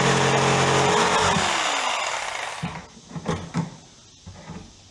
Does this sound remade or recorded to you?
recorded